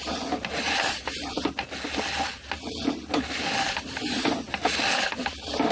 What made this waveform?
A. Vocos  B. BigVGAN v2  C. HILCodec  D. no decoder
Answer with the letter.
D